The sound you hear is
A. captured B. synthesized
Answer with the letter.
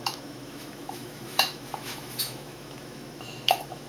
B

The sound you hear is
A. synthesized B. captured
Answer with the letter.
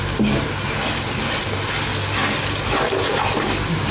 B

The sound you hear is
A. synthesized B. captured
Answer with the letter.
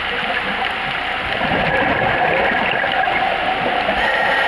B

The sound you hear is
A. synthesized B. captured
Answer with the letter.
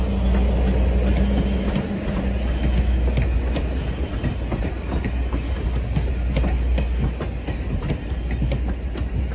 B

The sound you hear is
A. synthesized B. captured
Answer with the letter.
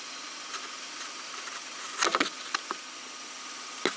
B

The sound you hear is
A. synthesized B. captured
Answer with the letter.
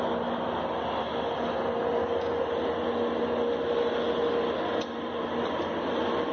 B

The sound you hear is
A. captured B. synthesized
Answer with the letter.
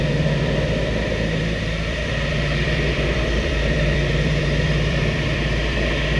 B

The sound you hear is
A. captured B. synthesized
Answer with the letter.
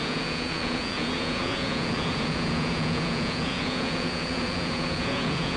B